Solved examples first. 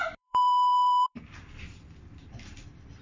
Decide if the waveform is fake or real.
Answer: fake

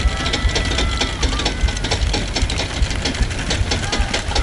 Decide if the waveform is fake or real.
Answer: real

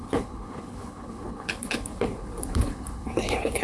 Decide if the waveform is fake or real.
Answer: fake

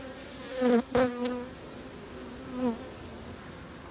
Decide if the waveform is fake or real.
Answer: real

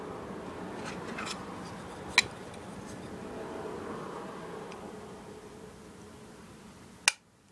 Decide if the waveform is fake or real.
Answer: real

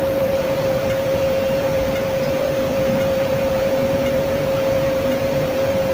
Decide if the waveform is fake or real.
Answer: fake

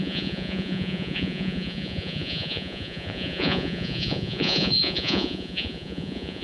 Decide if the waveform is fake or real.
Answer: fake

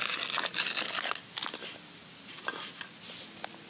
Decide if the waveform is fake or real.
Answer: real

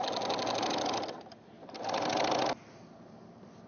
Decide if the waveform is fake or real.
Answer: real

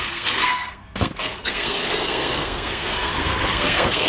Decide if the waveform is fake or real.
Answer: fake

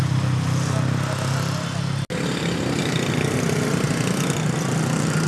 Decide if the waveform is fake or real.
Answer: real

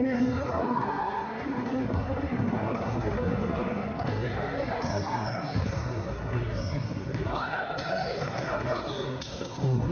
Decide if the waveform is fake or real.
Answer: fake